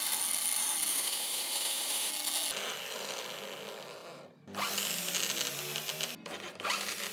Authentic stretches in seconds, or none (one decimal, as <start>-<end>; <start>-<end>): 0.0-0.9; 2.1-7.1